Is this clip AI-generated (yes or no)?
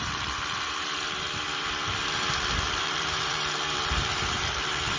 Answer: yes